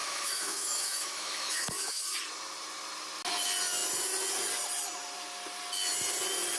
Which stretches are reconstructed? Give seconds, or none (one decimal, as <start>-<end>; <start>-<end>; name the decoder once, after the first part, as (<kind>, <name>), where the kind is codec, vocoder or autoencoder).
0.0-2.0 (autoencoder, DAC-VAE)

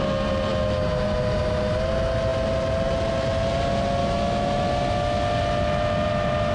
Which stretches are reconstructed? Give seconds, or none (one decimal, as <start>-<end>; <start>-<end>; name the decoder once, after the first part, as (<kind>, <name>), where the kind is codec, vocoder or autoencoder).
4.0-4.7 (autoencoder, DAC-VAE)

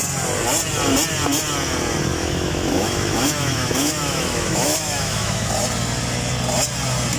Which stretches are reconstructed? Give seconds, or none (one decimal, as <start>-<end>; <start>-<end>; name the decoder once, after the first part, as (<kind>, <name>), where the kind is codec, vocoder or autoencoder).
2.1-5.5 (autoencoder, DAC-VAE)

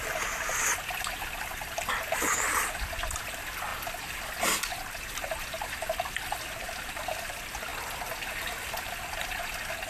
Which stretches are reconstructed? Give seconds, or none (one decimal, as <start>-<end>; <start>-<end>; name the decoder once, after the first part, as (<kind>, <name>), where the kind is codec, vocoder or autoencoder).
none